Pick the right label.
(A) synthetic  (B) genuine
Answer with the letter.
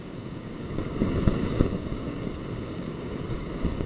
A